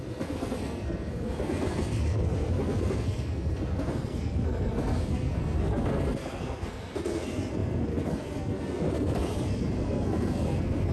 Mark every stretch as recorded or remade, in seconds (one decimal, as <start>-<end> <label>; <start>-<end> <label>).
0.0-10.9 remade